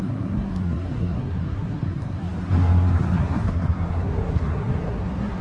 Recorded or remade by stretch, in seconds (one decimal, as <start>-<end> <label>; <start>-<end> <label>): 0.0-5.4 remade

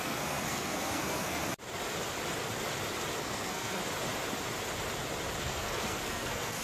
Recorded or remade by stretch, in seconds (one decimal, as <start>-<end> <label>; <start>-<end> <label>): 0.0-1.4 remade; 1.4-3.2 recorded; 3.2-3.8 remade; 3.8-5.4 recorded; 5.4-6.6 remade

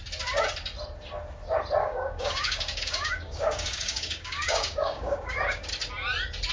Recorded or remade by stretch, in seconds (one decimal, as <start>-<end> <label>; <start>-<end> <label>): 0.0-1.8 recorded; 1.8-5.7 remade; 5.7-6.5 recorded

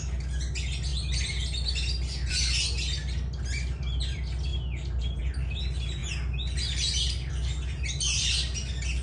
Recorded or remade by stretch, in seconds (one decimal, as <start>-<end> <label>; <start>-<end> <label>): 0.0-9.0 recorded

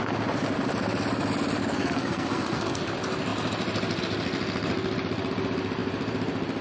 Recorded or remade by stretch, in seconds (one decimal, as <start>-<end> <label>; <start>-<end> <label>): 0.0-1.6 recorded; 1.6-2.8 remade; 2.8-6.6 recorded

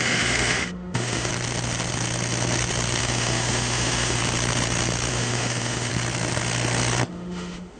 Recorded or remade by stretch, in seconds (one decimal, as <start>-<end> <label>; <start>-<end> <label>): 0.0-1.3 remade; 1.3-3.0 recorded; 3.0-4.2 remade; 4.2-5.1 recorded; 5.1-5.9 remade; 5.9-7.1 recorded; 7.1-7.8 remade